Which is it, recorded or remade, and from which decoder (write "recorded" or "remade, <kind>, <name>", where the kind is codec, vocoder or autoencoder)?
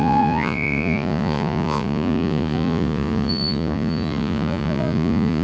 remade, vocoder, Vocos